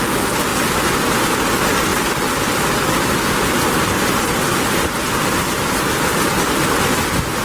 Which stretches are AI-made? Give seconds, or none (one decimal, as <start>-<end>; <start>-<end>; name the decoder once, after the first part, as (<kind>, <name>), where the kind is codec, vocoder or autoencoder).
none